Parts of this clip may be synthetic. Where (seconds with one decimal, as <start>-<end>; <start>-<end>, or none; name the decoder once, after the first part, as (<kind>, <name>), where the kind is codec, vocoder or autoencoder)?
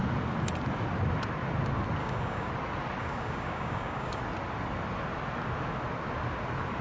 2.0-2.5 (codec, DAC); 3.0-4.2